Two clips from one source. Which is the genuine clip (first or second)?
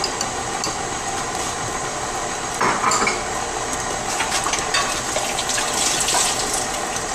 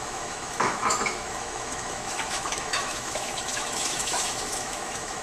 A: first